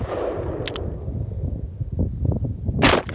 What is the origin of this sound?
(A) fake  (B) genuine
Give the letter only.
B